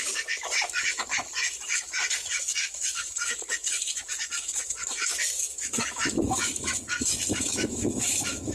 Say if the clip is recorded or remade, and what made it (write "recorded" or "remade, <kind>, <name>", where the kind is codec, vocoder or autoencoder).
remade, autoencoder, DAC-VAE